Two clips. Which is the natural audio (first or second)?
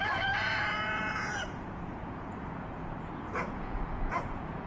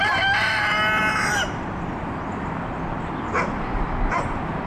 second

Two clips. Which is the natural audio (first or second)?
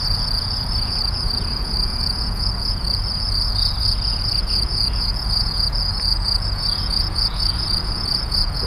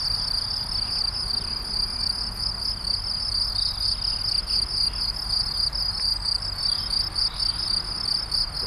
second